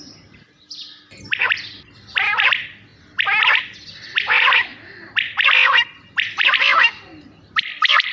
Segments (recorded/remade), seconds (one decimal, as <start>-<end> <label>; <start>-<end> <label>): 0.0-2.9 remade; 2.9-3.6 recorded; 3.6-4.7 remade; 4.7-5.8 recorded; 5.8-8.1 remade